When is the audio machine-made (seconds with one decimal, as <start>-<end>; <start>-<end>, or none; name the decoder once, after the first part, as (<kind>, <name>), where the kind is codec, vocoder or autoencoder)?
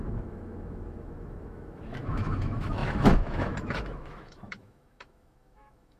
0.0-6.0 (autoencoder, DAC-VAE)